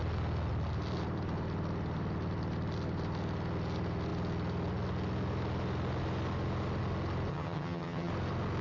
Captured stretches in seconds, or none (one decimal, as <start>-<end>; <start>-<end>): 0.0-7.3; 8.1-8.6